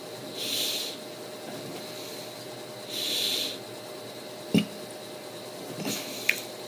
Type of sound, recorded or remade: recorded